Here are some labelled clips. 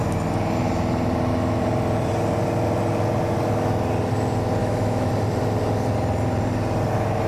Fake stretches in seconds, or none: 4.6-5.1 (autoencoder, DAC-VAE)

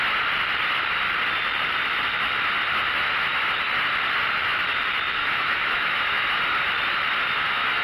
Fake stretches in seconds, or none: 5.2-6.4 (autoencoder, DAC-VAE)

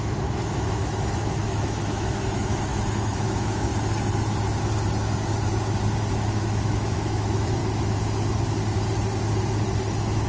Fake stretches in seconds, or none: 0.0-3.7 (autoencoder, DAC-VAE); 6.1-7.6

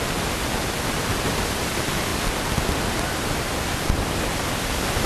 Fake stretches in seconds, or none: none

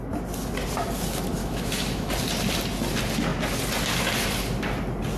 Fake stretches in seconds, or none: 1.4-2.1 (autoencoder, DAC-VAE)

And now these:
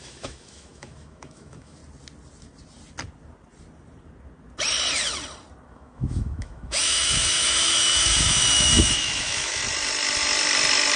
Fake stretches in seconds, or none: 0.0-1.8 (autoencoder, DAC-VAE); 5.7-9.6

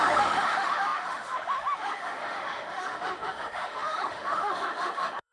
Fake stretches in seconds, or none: 0.0-5.3 (autoencoder, DAC-VAE)

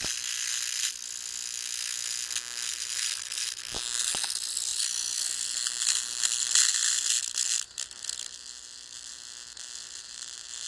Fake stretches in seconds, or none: none